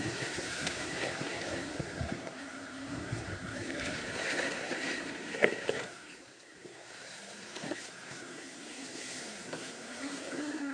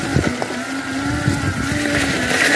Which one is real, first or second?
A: second